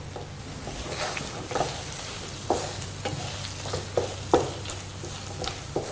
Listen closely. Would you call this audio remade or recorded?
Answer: recorded